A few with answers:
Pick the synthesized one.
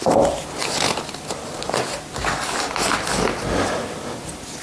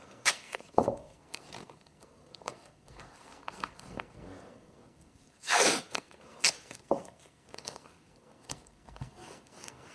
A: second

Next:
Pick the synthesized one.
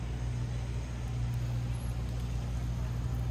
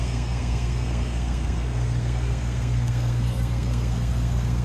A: second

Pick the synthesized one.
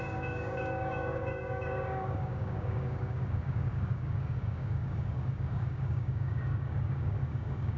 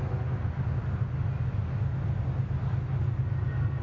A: first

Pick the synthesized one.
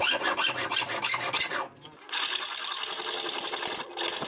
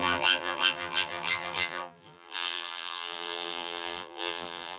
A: second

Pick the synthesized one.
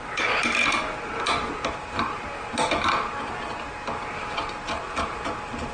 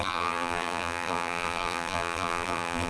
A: second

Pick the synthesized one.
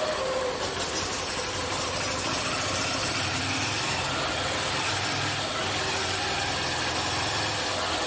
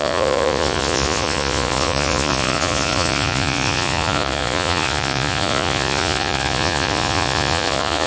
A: second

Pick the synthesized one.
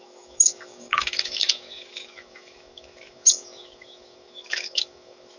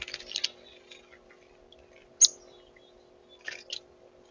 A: first